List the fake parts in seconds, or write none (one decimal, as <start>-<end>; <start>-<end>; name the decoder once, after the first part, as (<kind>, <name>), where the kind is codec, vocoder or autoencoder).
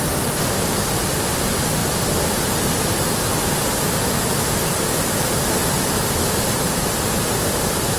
none